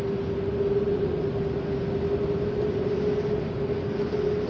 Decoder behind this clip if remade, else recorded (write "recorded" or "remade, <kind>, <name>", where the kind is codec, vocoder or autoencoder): recorded